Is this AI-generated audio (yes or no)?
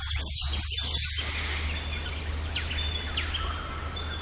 no